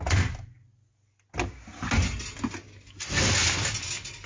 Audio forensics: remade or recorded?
recorded